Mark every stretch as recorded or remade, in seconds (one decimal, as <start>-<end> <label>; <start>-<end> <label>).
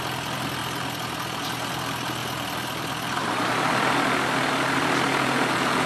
0.0-5.1 recorded; 5.1-5.9 remade